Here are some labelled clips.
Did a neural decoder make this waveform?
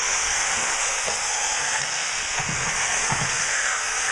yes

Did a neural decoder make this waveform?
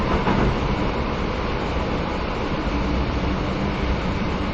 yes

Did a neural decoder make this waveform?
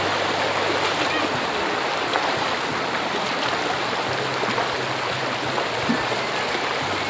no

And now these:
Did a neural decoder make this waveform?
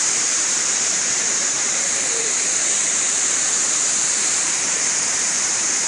yes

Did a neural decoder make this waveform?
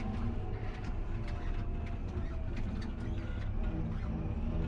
no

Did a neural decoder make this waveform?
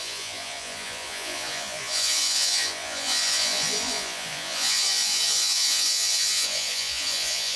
yes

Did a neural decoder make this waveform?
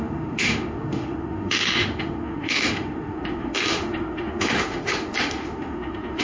yes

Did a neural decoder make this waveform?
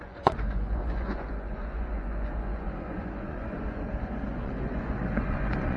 yes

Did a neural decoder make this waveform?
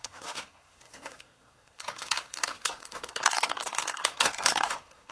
yes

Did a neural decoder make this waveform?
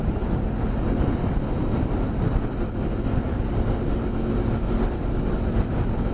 no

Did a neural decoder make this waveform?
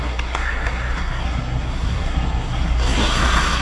yes